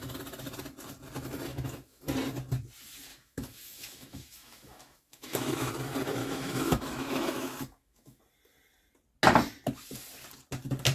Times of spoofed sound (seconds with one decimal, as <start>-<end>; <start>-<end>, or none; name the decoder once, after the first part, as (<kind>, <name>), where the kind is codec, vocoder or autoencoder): 1.5-2.0 (autoencoder, DAC-VAE); 3.1-5.7; 6.2-8.2